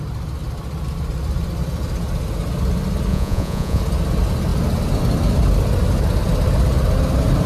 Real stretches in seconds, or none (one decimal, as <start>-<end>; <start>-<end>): 0.0-3.1; 3.8-7.5